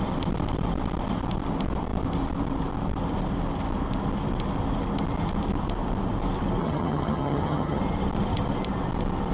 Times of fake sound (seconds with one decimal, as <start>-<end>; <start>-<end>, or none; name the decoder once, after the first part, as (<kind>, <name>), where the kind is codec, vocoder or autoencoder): 6.6-7.8 (vocoder, HiFi-GAN)